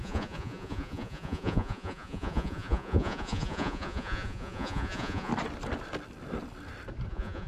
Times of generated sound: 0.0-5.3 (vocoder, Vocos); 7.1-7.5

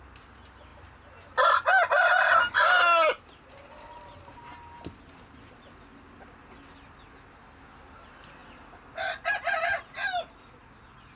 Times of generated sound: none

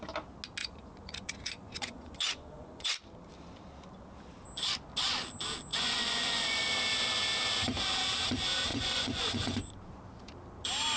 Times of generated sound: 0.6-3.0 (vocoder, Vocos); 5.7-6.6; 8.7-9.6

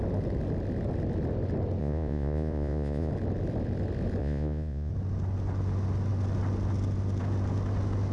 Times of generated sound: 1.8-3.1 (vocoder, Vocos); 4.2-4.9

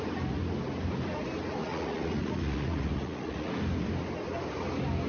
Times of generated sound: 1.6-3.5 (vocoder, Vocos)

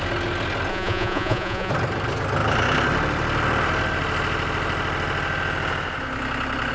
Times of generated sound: 0.7-1.7 (vocoder, Vocos)

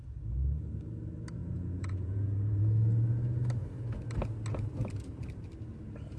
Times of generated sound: 1.4-2.6 (vocoder, Vocos)

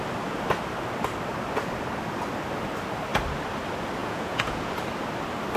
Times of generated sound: 4.0-4.7 (vocoder, Vocos)